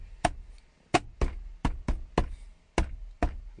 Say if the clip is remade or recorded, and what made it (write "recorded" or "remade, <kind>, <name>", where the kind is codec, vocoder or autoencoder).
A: recorded